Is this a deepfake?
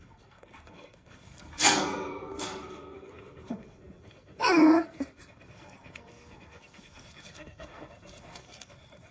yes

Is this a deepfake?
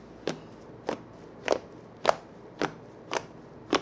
no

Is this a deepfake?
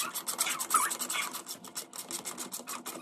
no